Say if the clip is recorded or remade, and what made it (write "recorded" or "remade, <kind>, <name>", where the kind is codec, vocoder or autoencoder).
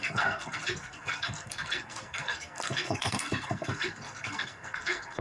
remade, codec, SNAC